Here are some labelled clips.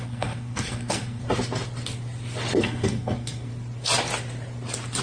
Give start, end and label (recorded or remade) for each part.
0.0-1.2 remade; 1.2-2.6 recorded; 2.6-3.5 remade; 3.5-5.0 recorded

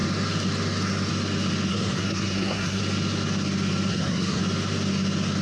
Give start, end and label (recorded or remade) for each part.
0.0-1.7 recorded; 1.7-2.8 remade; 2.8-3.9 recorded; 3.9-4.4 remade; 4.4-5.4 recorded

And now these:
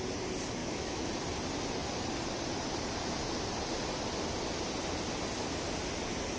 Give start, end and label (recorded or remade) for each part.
0.0-0.6 recorded; 0.6-1.1 remade; 1.1-6.4 recorded

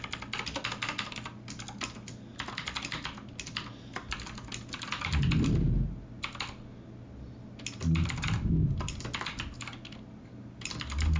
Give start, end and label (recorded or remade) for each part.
0.0-11.2 recorded

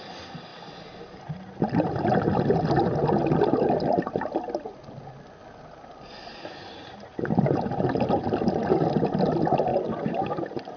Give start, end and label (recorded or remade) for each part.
0.0-10.8 recorded

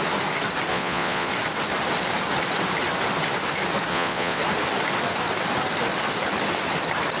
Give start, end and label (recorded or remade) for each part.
0.0-0.7 recorded; 0.7-1.3 remade; 1.3-3.9 recorded; 3.9-4.4 remade; 4.4-7.2 recorded